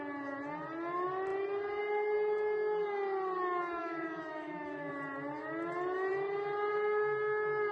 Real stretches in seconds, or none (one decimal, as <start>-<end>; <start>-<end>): 0.0-3.8; 4.9-7.7